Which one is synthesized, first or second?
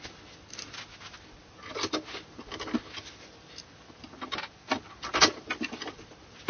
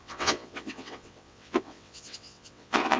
second